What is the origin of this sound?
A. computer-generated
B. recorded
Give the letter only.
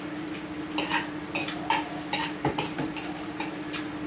B